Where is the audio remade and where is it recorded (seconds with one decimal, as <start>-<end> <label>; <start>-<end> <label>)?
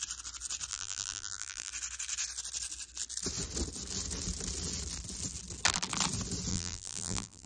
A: 0.0-0.7 recorded; 0.7-1.7 remade; 1.7-6.5 recorded; 6.5-7.5 remade